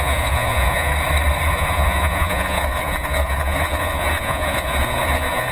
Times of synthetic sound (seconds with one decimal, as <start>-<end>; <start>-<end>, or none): 0.0-0.9; 1.5-5.5